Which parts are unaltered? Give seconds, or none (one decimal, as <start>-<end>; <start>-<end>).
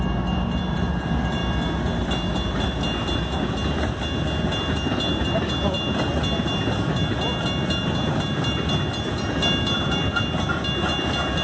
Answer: 0.0-11.4